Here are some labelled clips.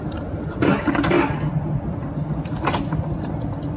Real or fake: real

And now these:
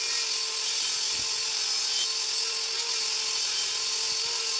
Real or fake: real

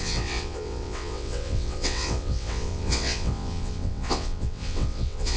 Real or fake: fake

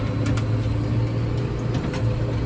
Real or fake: real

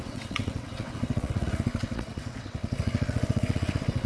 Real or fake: fake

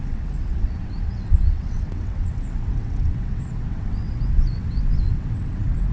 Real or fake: fake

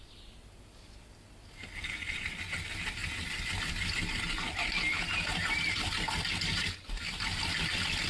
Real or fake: real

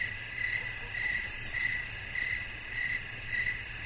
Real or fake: real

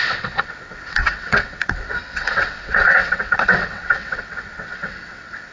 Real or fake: fake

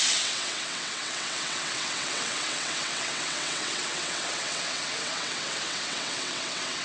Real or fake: fake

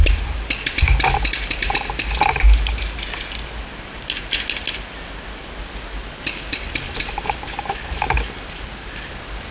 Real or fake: real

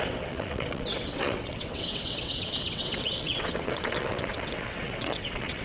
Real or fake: fake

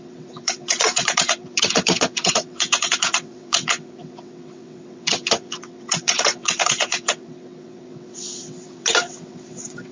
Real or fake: fake